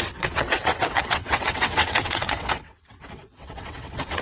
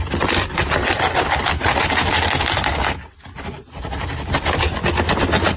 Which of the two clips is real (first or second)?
second